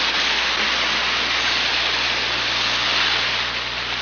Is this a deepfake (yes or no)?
no